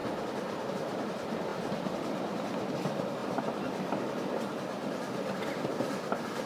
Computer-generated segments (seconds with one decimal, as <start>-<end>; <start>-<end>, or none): 3.2-4.3